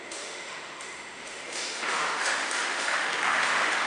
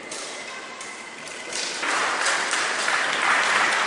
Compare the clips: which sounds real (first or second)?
second